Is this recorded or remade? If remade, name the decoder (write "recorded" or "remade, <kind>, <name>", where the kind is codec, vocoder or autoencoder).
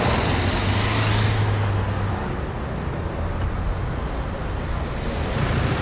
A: recorded